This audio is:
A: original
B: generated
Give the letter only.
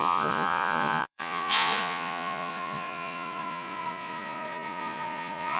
B